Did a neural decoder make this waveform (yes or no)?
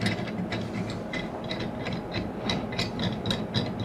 no